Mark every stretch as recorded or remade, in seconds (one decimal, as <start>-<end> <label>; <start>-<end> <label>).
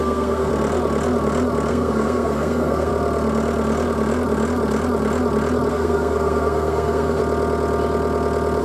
0.0-0.5 remade; 0.5-1.7 recorded; 1.7-2.9 remade; 2.9-5.7 recorded; 5.7-7.2 remade; 7.2-8.6 recorded